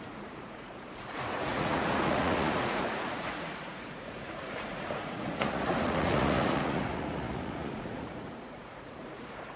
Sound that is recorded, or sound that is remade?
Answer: remade